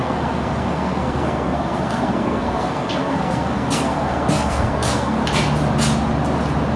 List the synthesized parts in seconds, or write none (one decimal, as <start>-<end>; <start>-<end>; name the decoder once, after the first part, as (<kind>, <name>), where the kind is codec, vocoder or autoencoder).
0.0-5.2 (codec, SNAC)

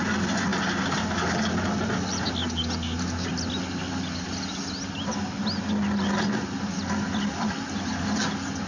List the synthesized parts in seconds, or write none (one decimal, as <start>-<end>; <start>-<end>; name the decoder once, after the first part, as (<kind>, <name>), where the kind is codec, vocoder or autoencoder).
none

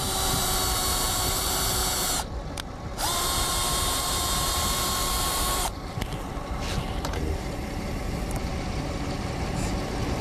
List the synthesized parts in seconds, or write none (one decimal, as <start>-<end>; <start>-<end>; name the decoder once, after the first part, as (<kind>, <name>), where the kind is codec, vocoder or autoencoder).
0.0-1.8 (vocoder, BigVGAN v2); 3.1-10.2